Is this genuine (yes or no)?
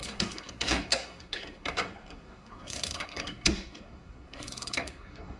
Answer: no